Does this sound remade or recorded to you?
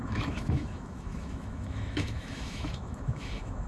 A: remade